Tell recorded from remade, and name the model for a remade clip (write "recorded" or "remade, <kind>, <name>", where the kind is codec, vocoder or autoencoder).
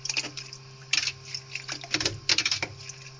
recorded